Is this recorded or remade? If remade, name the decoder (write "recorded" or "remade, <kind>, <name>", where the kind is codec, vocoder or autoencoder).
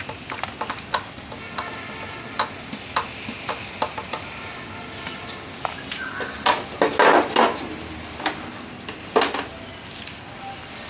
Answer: recorded